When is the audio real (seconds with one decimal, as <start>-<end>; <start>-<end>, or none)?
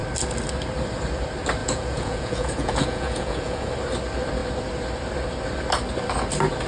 0.0-1.6; 3.7-6.7